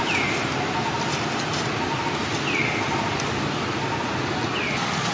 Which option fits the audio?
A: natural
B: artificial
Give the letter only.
A